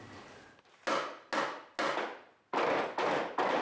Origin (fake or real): real